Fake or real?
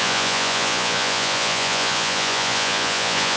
fake